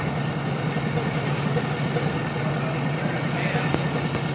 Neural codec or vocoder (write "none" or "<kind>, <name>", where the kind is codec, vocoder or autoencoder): none